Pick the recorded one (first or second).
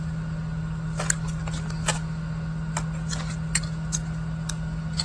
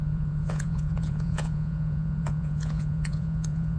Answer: first